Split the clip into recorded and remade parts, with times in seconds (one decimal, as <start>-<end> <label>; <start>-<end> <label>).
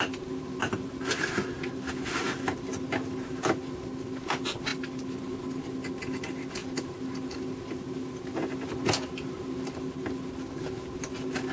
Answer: 0.0-11.5 recorded